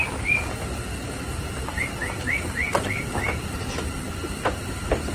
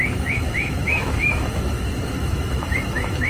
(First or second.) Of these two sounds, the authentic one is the first